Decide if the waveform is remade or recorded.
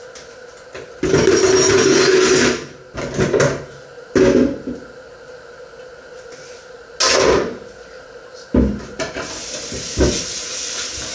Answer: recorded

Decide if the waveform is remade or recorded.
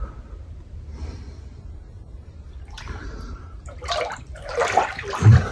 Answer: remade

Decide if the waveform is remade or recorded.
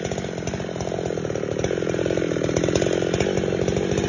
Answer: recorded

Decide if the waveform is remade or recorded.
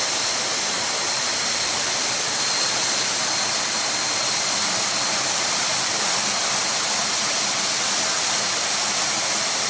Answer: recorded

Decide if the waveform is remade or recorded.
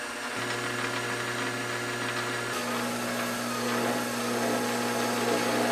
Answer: recorded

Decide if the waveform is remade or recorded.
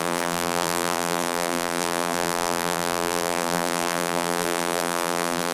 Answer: remade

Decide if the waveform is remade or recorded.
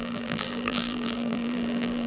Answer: remade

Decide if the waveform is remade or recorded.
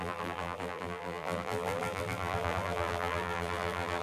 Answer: remade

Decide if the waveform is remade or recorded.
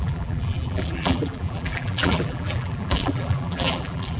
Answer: remade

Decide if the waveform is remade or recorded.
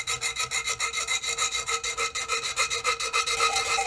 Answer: recorded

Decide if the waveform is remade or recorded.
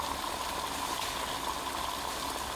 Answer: recorded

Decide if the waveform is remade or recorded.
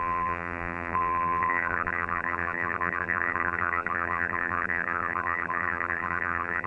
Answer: remade